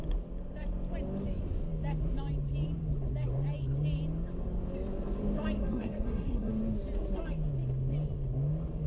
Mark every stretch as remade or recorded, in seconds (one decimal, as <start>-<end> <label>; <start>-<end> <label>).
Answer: 0.0-5.6 recorded; 5.6-6.5 remade; 6.5-8.9 recorded

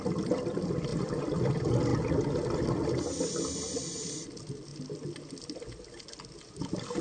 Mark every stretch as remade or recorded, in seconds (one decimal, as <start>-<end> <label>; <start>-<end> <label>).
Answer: 0.0-7.0 recorded

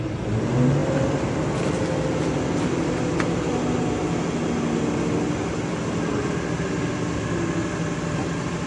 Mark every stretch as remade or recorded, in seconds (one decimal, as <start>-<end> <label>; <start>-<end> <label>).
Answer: 0.0-8.7 recorded